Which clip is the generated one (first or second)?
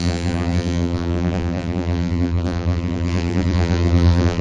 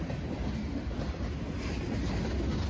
first